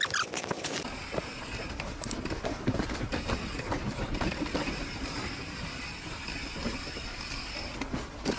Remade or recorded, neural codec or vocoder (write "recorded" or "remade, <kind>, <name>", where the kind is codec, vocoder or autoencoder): recorded